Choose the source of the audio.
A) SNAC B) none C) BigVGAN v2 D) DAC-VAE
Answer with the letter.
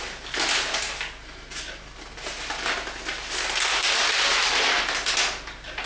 B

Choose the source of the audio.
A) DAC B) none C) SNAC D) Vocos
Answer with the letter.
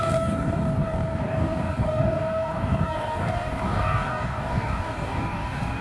A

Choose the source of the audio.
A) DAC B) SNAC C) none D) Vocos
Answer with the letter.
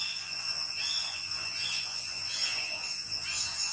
D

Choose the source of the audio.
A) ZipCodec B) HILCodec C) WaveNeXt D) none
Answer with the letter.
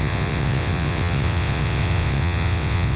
C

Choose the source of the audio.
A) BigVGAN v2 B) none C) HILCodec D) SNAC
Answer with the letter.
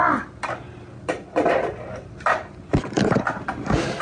B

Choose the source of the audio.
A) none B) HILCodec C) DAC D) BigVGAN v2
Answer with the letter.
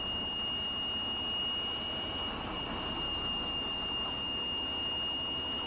A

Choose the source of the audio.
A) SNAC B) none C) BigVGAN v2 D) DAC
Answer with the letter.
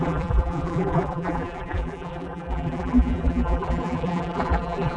C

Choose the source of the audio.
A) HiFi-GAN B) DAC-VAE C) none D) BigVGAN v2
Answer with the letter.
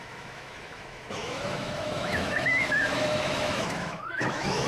B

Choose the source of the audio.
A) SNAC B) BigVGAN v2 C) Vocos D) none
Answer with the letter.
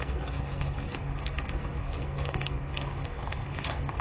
A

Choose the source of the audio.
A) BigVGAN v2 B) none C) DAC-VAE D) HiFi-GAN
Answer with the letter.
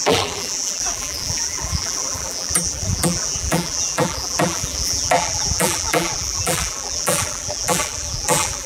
A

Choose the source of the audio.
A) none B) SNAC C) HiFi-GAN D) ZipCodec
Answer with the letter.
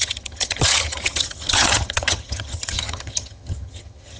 C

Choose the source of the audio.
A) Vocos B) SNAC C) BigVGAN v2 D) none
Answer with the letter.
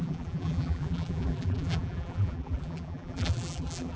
C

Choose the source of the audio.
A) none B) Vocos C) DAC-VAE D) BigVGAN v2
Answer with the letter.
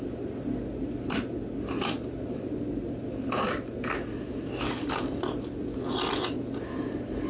A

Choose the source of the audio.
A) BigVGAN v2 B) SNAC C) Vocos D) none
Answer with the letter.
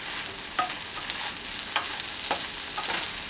D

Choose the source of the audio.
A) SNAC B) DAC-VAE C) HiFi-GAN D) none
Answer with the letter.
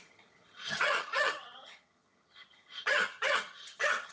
C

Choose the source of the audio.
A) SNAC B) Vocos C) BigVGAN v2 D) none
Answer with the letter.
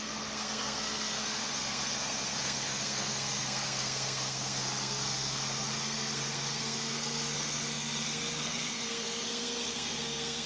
A